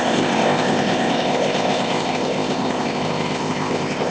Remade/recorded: remade